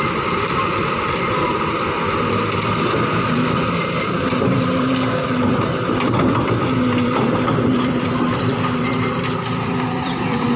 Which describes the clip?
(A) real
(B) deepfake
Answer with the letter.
B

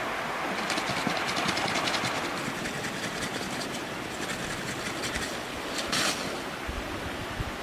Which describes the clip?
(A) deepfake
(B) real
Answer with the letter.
B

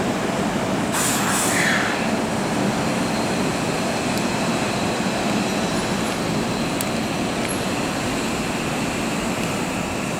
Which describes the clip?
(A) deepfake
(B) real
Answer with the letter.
B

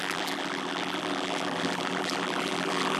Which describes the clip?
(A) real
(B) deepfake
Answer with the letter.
B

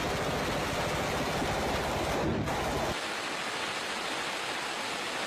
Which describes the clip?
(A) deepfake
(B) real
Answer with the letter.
B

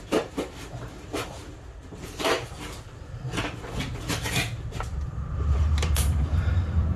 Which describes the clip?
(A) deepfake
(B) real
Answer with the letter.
A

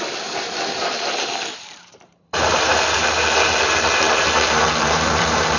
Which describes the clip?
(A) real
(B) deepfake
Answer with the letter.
B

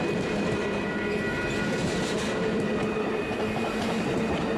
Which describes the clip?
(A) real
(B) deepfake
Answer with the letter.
B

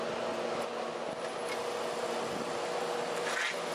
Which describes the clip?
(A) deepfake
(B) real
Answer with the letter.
B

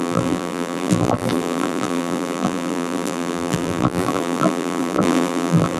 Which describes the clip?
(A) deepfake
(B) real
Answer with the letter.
A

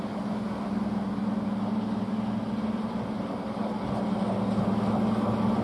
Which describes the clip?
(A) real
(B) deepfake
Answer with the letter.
A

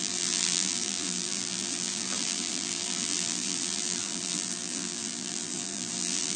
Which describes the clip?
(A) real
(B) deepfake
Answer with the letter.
B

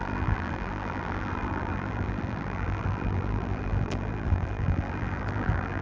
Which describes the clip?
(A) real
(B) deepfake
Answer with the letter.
B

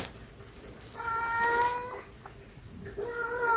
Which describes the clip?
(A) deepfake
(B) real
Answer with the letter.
B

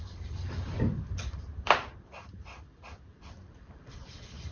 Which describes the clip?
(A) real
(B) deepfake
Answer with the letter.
B